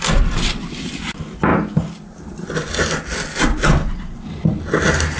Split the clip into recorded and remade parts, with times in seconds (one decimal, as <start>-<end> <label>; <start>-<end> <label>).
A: 0.0-5.2 recorded